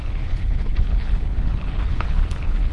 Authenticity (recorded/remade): remade